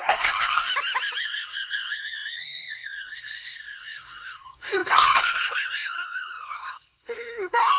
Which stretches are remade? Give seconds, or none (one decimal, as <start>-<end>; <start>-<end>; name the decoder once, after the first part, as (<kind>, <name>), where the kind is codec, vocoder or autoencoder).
0.0-0.7 (codec, SNAC); 1.2-7.8